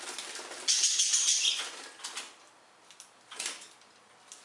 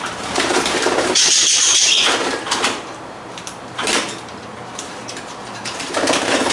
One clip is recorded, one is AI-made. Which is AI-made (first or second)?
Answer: second